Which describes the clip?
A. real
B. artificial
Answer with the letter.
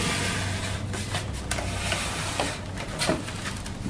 A